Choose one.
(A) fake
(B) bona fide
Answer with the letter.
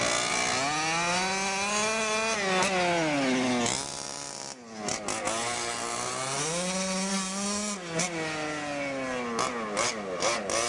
B